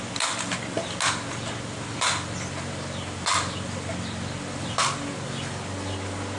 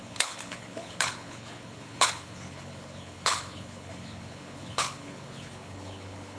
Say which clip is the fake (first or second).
second